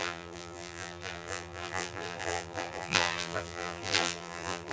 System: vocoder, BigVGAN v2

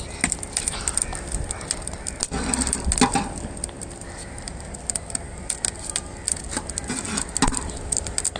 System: none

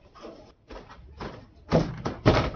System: vocoder, BigVGAN v2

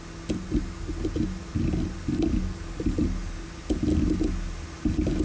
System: none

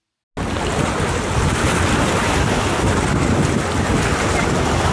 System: none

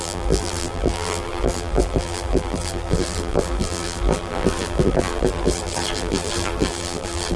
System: vocoder, BigVGAN v2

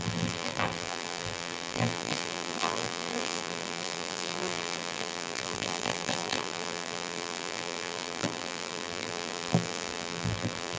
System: vocoder, BigVGAN v2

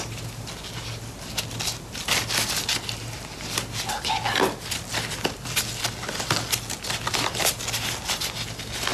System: none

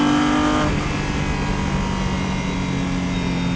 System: none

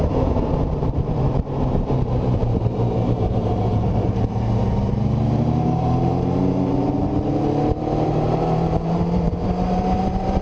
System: vocoder, BigVGAN v2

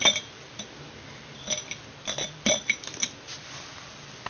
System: none